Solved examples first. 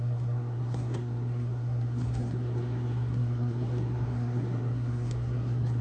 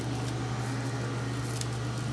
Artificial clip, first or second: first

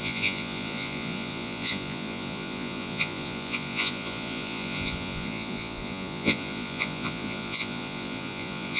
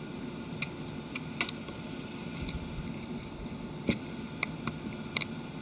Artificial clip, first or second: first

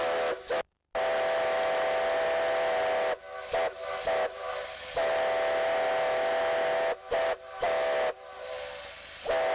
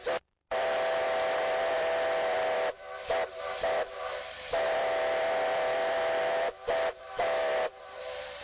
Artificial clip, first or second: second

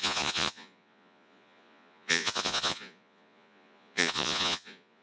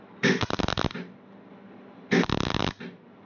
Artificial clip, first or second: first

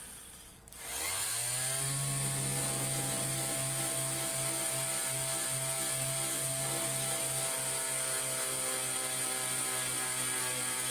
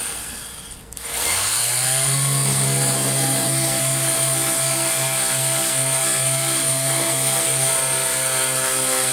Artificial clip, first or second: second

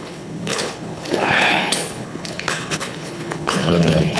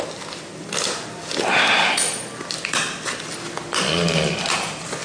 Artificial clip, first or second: first